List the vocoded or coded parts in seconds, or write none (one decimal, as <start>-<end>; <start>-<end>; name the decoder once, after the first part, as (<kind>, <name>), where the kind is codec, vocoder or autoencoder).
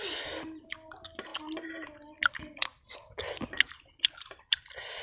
none